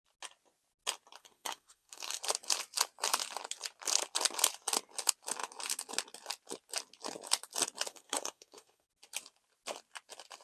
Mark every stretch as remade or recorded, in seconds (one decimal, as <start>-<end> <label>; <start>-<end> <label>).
0.0-1.2 recorded; 1.2-2.2 remade; 2.2-7.9 recorded; 7.9-8.9 remade; 8.9-10.4 recorded